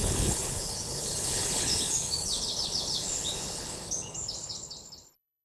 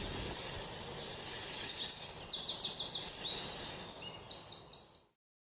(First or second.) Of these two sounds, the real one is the second